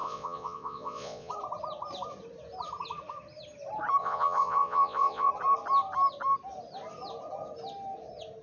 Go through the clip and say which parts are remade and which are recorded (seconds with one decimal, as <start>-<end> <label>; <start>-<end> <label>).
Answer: 0.0-1.3 remade; 1.3-4.0 recorded; 4.0-5.3 remade; 5.3-8.4 recorded